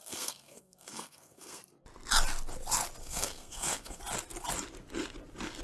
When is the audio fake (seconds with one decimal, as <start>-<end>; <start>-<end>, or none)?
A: 0.0-1.6; 3.0-4.0